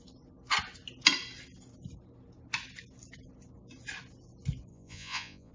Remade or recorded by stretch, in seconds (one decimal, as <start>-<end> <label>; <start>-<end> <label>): 0.0-4.7 recorded; 4.7-5.5 remade